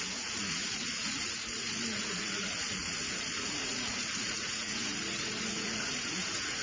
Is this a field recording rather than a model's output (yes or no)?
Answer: no